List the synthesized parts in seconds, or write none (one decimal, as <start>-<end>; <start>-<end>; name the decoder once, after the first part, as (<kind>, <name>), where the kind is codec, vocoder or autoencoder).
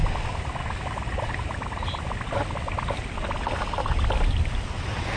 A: 0.0-2.3 (vocoder, BigVGAN v2)